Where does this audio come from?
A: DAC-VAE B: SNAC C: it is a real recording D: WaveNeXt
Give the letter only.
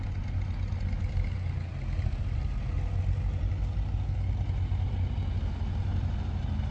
C